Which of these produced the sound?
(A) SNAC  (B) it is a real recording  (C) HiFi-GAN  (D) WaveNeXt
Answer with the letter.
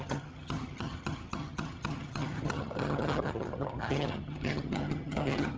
C